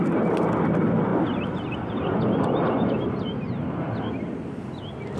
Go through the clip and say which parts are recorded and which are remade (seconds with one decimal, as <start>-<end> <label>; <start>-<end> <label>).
0.0-5.2 recorded